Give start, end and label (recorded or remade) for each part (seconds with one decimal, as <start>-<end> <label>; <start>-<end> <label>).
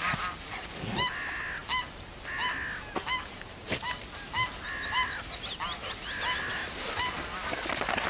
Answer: 0.0-8.1 recorded